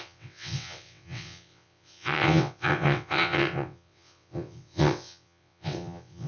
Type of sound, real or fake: fake